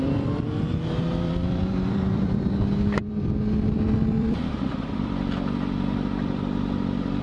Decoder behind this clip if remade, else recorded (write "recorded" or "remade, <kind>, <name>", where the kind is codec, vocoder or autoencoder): remade, vocoder, BigVGAN v2